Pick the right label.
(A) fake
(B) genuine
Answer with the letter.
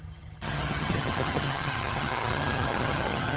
A